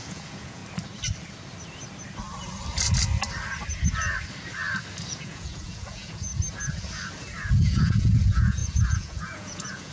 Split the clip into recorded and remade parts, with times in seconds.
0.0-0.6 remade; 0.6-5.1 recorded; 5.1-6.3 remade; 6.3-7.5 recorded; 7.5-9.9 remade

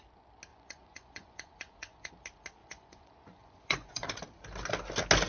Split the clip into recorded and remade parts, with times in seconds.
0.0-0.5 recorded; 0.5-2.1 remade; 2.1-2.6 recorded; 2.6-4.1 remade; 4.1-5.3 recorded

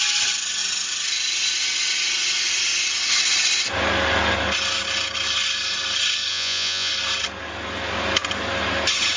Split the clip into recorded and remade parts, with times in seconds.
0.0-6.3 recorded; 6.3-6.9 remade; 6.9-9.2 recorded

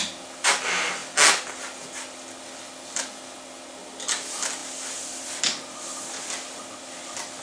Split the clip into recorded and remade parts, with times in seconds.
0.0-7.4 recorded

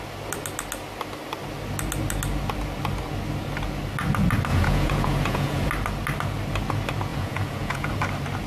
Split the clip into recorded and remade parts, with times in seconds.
0.0-4.5 recorded; 4.5-5.7 remade; 5.7-7.1 recorded; 7.1-7.9 remade; 7.9-8.5 recorded